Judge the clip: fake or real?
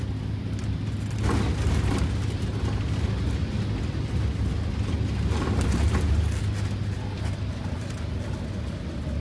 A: real